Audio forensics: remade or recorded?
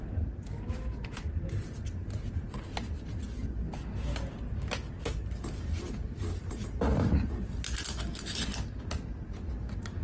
recorded